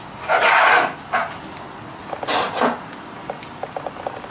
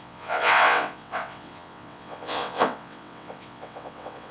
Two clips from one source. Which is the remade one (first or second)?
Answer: second